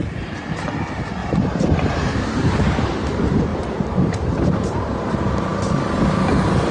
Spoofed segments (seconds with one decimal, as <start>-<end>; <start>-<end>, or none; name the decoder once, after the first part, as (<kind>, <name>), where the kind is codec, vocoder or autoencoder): 1.2-2.6 (vocoder, BigVGAN v2); 3.5-4.9